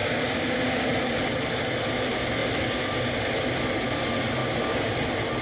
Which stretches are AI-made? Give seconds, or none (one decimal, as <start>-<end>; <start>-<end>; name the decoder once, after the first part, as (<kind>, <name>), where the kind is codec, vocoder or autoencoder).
0.0-0.9 (codec, DAC); 4.4-4.9